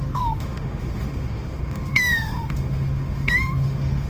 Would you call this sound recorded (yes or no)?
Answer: no